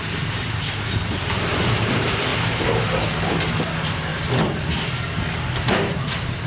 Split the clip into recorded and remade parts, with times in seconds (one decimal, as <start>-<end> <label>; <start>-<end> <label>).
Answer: 0.0-2.3 remade; 2.3-3.6 recorded; 3.6-4.1 remade; 4.1-5.6 recorded; 5.6-6.5 remade